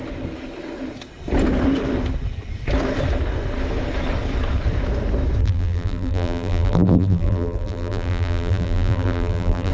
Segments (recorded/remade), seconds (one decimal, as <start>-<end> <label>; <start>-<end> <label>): 0.0-5.4 recorded; 5.4-9.7 remade